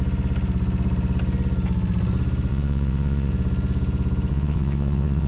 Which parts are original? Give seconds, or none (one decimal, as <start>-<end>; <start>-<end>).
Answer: 0.0-2.5; 3.3-4.3